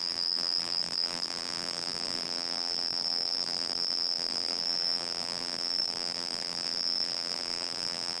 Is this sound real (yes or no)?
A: no